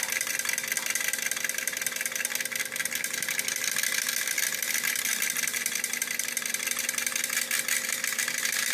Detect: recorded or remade recorded